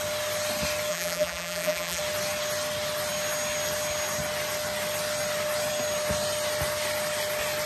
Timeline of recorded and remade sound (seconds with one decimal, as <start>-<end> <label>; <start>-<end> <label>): 0.0-0.9 recorded; 0.9-2.0 remade; 2.0-7.7 recorded